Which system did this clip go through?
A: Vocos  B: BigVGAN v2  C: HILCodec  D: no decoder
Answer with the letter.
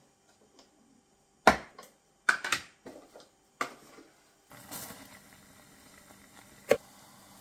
D